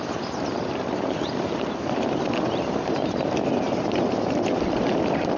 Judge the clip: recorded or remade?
remade